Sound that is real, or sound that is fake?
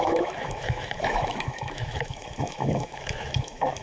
fake